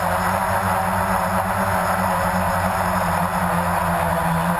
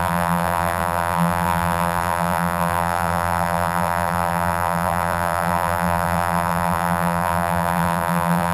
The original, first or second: first